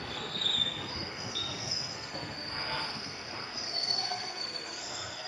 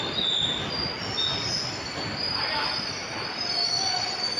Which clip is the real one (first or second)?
second